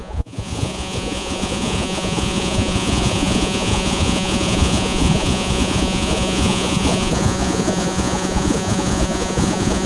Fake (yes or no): yes